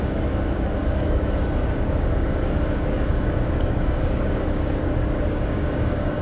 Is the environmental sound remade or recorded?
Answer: remade